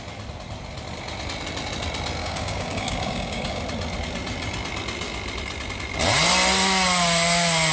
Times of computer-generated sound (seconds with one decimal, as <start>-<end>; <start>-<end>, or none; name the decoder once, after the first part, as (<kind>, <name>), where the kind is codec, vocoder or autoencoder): 2.2-3.6 (codec, DAC)